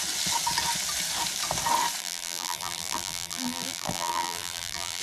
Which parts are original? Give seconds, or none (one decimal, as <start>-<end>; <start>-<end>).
0.0-2.0